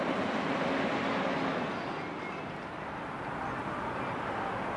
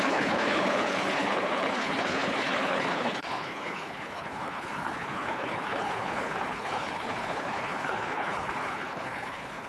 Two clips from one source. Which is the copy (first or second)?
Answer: second